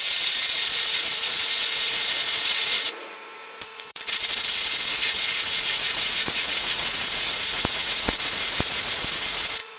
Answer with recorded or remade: remade